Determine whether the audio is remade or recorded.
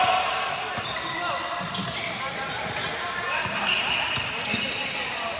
recorded